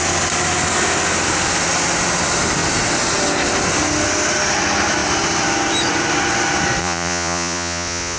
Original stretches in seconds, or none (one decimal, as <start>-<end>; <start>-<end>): 0.0-6.8